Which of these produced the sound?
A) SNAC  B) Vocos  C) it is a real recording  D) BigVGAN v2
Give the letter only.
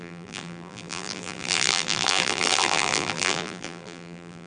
D